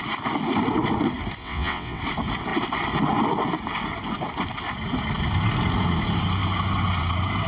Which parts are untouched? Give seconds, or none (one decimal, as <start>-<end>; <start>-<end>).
0.0-1.4; 2.0-7.5